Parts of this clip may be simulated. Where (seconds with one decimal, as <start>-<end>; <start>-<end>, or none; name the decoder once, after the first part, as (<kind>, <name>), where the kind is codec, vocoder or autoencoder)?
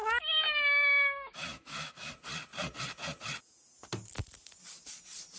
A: 0.0-2.1 (autoencoder, DAC-VAE)